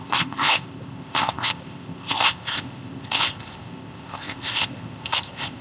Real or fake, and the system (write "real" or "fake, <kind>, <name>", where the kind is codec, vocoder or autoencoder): fake, codec, ZipCodec